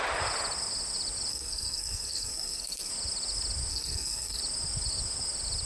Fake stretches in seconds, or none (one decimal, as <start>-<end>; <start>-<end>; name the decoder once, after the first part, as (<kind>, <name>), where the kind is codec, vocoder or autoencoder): 1.3-2.9 (codec, SNAC); 3.7-4.4